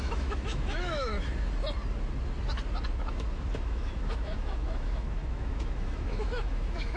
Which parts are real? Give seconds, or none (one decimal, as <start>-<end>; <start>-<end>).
1.1-3.1